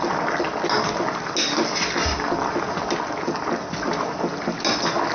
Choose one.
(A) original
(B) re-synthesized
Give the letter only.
A